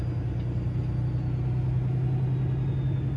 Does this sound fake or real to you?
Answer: real